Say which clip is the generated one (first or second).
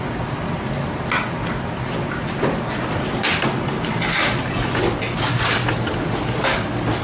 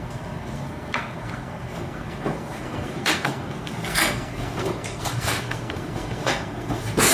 second